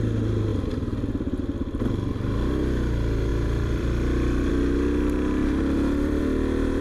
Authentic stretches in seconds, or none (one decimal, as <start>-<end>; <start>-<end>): 0.0-0.5; 1.4-3.3; 4.5-5.4; 6.2-6.8